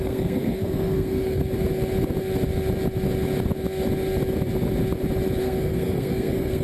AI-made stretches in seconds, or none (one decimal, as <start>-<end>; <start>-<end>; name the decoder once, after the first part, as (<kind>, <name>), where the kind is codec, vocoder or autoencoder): 0.0-1.4 (codec, SNAC); 5.4-6.6